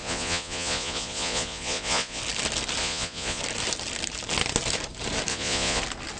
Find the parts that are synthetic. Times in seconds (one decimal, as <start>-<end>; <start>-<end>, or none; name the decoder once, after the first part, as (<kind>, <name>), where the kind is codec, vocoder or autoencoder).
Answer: 0.0-2.2 (vocoder, Vocos); 2.8-3.4; 5.3-5.8